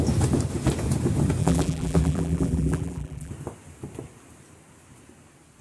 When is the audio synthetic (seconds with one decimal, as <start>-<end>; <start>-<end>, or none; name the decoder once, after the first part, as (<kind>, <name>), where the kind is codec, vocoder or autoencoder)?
1.4-3.3 (vocoder, BigVGAN v2)